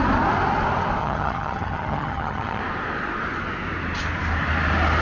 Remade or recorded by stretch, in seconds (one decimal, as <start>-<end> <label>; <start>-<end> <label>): 0.0-1.0 recorded; 1.0-2.6 remade; 2.6-5.0 recorded